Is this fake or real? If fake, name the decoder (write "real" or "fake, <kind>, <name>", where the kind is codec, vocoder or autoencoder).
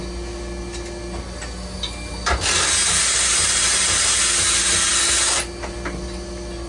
real